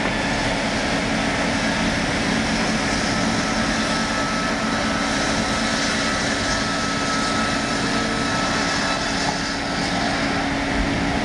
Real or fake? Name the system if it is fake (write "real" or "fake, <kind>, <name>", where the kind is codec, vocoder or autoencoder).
real